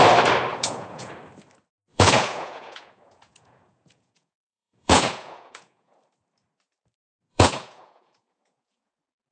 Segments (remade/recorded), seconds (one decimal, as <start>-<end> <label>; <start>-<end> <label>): 0.0-0.5 recorded; 0.5-1.1 remade; 1.1-1.9 recorded; 1.9-6.0 remade; 6.0-7.3 recorded; 7.3-8.9 remade; 8.9-9.3 recorded